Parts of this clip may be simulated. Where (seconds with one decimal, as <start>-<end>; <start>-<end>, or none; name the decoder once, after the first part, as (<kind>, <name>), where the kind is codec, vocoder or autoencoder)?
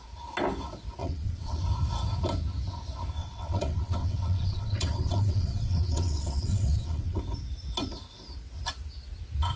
1.0-1.6 (vocoder, WaveNeXt); 3.2-7.2